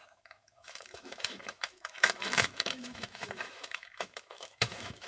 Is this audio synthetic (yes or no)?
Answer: yes